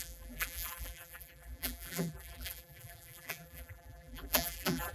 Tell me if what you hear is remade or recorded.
remade